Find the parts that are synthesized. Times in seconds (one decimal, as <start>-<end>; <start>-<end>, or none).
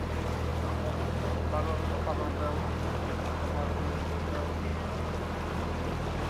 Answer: none